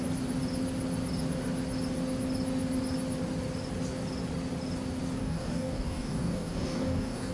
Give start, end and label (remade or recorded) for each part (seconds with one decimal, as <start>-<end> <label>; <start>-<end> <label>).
0.0-5.2 recorded; 5.2-7.3 remade